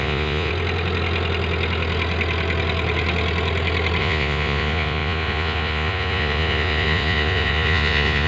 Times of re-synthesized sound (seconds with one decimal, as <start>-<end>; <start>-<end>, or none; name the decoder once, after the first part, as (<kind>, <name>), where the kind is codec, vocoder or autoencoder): 0.0-0.5 (vocoder, Vocos); 4.0-8.3